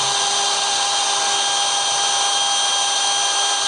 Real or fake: real